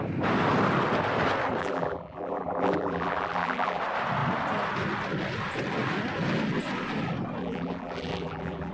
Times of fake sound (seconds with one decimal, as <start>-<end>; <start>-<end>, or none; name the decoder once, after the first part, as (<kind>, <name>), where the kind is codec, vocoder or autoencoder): 1.6-3.8 (vocoder, BigVGAN v2); 7.4-8.7